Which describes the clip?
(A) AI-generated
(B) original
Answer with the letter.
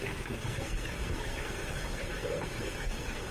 A